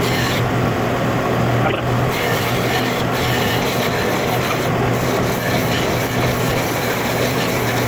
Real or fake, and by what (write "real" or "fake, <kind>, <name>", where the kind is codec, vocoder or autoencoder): real